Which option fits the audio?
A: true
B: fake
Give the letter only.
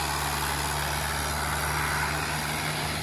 A